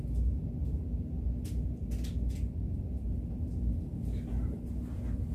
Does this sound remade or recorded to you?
recorded